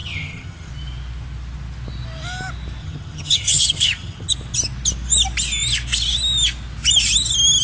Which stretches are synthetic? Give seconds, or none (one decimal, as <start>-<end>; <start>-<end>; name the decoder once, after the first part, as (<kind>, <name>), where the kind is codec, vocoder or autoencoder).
0.0-0.7 (vocoder, HiFi-GAN); 2.8-4.3